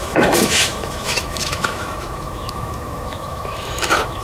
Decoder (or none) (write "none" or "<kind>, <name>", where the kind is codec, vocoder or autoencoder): autoencoder, DAC-VAE